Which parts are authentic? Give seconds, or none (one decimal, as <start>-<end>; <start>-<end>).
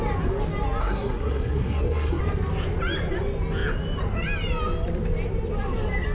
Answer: 0.0-0.8; 2.2-6.1